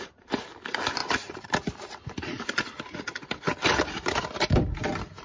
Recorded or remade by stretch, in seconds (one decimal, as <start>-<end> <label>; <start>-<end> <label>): 0.0-1.0 recorded; 1.0-3.0 remade; 3.0-5.2 recorded